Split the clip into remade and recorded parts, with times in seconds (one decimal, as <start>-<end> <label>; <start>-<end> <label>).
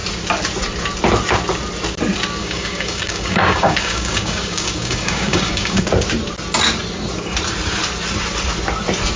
0.0-2.4 recorded; 2.4-5.8 remade; 5.8-9.2 recorded